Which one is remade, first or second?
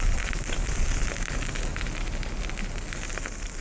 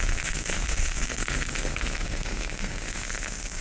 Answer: second